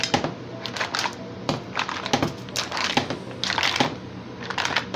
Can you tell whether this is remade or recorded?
recorded